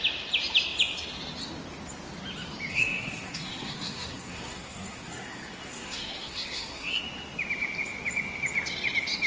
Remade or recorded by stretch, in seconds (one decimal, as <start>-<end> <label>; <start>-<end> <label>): 0.0-2.7 recorded; 2.7-7.0 remade; 7.0-9.3 recorded

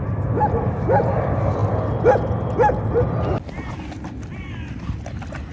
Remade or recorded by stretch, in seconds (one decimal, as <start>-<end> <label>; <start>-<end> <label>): 0.0-1.6 remade; 1.6-2.8 recorded; 2.8-5.5 remade

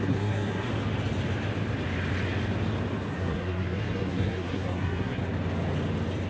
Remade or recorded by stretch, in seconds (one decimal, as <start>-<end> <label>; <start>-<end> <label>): 0.0-0.7 remade; 0.7-3.1 recorded; 3.1-5.2 remade; 5.2-6.3 recorded

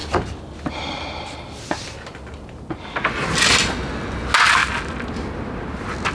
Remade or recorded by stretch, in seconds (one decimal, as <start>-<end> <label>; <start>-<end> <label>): 0.0-6.1 recorded

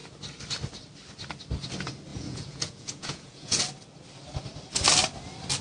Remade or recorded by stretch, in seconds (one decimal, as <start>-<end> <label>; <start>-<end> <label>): 0.0-2.1 recorded; 2.1-3.6 remade; 3.6-5.6 recorded

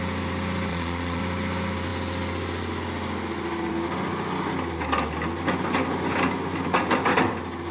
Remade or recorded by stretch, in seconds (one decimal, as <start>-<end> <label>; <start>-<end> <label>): 0.0-0.7 recorded; 0.7-1.2 remade; 1.2-7.7 recorded